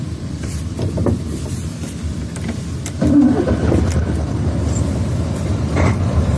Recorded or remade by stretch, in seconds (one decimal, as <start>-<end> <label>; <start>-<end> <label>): 0.0-6.4 remade

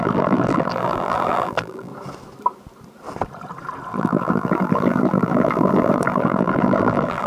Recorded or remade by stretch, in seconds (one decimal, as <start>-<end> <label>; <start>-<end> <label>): 0.0-1.9 remade; 1.9-3.9 recorded; 3.9-7.3 remade

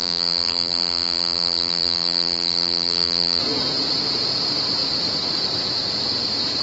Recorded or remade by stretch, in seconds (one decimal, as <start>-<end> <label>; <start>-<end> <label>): 0.0-3.4 remade; 3.4-6.6 recorded

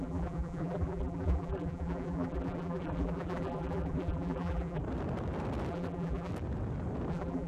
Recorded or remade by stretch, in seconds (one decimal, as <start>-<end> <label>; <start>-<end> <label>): 0.0-4.8 remade; 4.8-5.7 recorded; 5.7-6.3 remade; 6.3-7.1 recorded; 7.1-7.5 remade

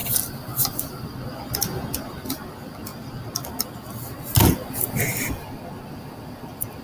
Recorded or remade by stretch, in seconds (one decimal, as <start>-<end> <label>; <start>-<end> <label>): 0.0-1.4 remade; 1.4-2.1 recorded; 2.1-2.9 remade; 2.9-4.7 recorded; 4.7-6.8 remade

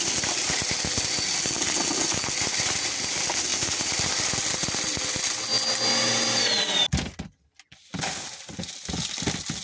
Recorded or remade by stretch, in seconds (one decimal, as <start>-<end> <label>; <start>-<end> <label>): 0.0-3.5 recorded; 3.5-4.1 remade; 4.1-9.6 recorded

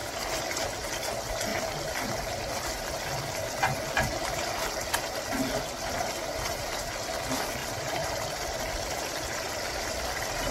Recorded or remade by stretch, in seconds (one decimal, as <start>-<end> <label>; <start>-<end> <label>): 0.0-7.6 recorded; 7.6-10.5 remade

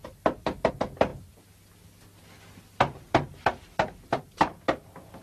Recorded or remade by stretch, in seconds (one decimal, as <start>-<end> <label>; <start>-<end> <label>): 0.0-0.7 remade; 0.7-5.2 recorded